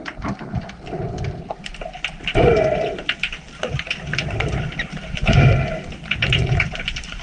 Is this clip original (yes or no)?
yes